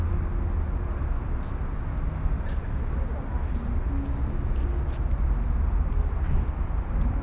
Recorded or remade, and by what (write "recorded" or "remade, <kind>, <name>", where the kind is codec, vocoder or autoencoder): recorded